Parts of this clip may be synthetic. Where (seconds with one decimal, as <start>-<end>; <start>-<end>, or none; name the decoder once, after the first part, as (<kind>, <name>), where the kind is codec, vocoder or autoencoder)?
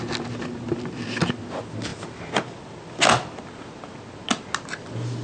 none